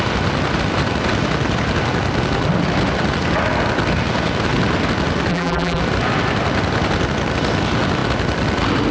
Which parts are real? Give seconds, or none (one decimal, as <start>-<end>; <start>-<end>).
0.0-5.3; 5.8-8.9